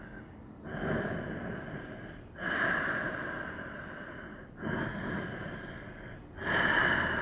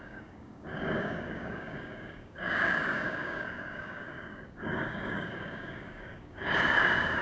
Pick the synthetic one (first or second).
second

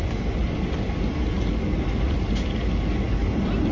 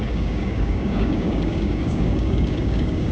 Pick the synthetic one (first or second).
second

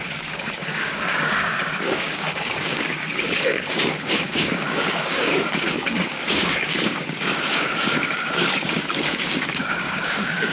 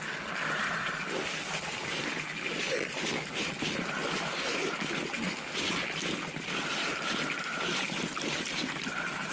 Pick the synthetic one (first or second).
first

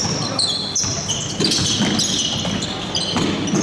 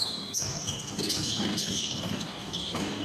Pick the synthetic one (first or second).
second